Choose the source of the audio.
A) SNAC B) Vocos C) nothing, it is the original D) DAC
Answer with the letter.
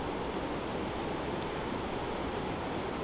C